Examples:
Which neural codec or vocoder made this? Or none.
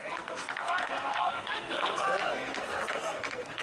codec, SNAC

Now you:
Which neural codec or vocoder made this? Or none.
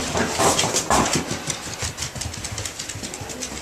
none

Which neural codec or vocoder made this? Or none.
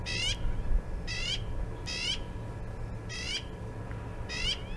none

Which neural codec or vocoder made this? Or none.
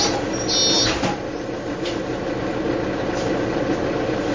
none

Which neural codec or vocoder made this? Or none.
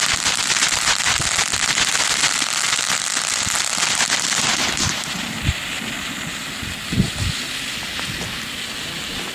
none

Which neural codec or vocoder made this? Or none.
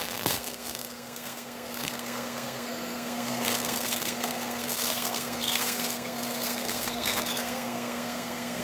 codec, SNAC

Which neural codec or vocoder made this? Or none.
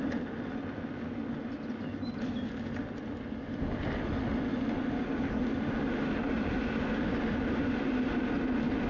none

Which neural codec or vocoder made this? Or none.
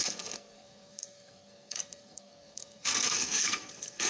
codec, SNAC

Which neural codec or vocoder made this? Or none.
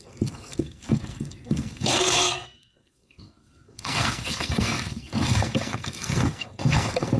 codec, SNAC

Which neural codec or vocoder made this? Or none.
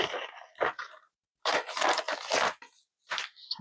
none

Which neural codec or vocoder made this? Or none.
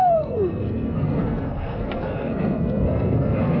codec, SNAC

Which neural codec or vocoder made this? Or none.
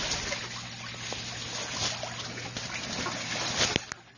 none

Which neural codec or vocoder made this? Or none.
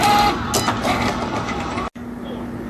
none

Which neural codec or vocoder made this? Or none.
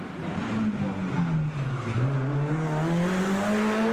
none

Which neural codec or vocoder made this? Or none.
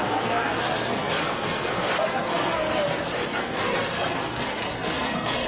codec, SNAC